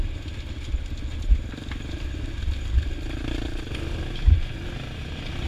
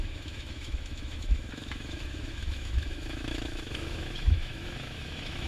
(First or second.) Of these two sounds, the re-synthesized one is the second